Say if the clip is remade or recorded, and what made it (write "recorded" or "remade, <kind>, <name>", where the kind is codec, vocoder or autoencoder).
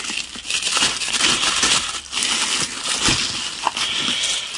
recorded